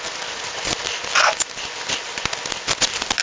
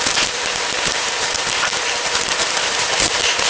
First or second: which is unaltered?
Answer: first